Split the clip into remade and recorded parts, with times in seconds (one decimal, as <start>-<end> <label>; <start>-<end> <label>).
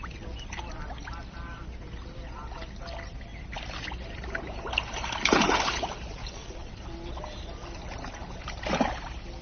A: 0.0-6.2 recorded; 6.2-6.7 remade; 6.7-9.4 recorded